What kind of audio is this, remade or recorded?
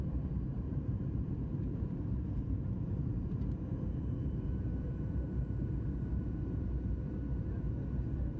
remade